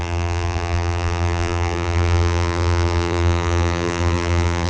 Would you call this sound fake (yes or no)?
yes